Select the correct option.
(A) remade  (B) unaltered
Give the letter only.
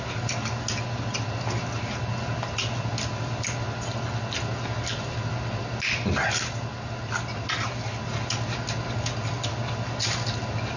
B